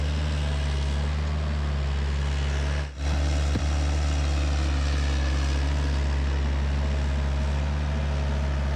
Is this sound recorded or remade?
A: recorded